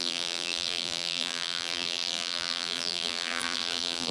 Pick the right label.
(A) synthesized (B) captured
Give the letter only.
A